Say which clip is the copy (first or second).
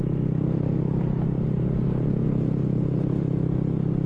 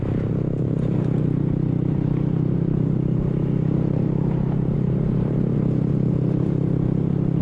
second